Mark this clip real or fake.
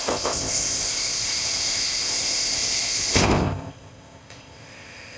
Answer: fake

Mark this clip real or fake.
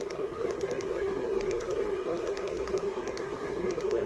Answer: fake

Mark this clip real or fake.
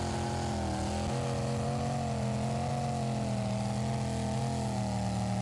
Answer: real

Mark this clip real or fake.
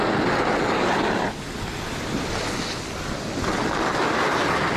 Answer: real